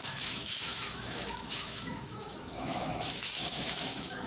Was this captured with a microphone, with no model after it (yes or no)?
no